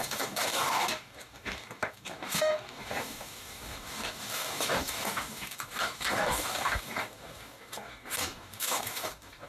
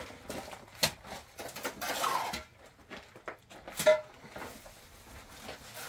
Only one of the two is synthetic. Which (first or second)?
first